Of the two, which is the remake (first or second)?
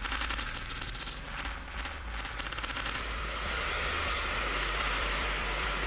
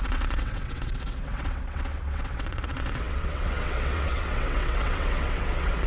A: second